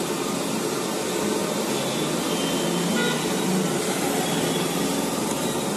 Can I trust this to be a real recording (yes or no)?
yes